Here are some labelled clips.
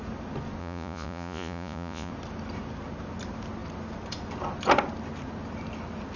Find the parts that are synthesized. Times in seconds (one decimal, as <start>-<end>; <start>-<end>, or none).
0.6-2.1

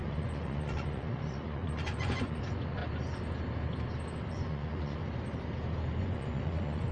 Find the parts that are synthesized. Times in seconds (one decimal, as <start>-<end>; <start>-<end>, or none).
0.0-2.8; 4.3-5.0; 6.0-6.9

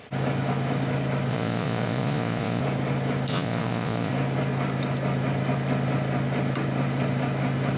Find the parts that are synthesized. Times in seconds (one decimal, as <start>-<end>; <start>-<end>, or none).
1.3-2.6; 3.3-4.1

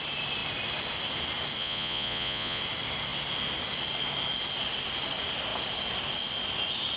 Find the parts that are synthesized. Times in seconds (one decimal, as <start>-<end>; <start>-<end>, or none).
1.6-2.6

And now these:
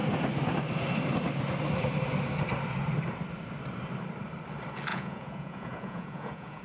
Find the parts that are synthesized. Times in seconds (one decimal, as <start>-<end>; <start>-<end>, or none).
4.9-6.6

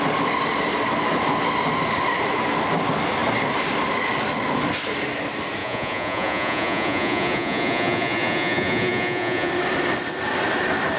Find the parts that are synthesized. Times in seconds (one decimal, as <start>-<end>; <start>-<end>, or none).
5.6-9.5